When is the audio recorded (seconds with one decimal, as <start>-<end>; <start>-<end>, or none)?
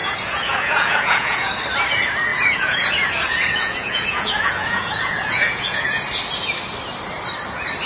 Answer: 1.5-2.3; 6.0-7.9